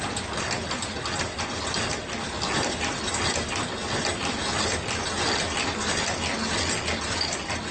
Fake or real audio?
real